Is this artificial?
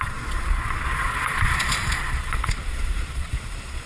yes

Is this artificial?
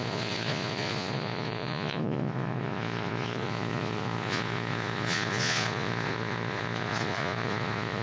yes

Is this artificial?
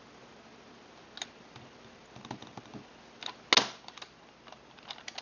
no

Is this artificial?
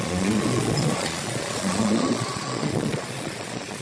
yes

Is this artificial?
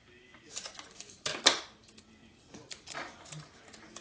no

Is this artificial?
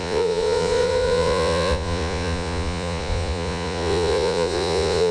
yes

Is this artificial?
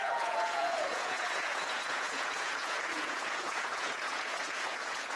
yes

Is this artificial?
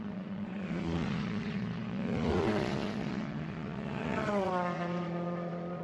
yes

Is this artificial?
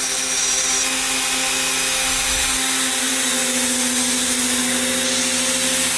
no